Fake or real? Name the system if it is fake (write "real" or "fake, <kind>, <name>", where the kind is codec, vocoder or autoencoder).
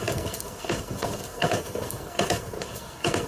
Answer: fake, codec, SNAC